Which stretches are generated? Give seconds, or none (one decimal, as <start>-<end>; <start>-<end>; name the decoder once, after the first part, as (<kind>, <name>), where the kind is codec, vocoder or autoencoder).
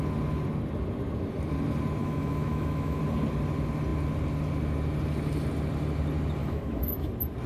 2.0-3.0 (autoencoder, DAC-VAE); 6.4-7.1